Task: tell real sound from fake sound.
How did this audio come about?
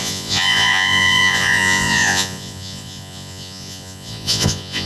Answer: fake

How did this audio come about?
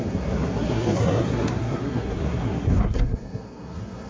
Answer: fake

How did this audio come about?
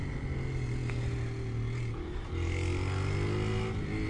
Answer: real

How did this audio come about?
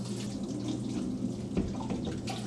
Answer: real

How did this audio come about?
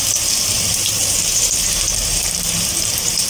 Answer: fake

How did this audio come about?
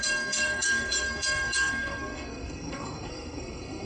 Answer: fake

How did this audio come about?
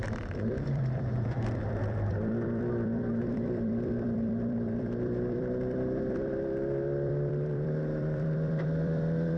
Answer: fake